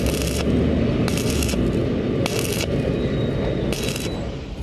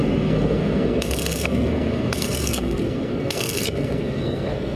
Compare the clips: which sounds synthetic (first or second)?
second